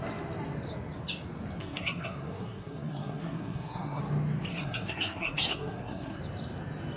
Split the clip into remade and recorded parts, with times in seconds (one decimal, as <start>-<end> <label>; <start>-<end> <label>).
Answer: 0.0-1.6 recorded; 1.6-4.0 remade; 4.0-4.5 recorded; 4.5-6.2 remade; 6.2-7.0 recorded